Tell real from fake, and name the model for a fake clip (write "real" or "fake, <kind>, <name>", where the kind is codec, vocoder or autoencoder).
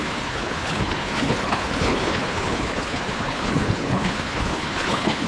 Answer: fake, codec, HILCodec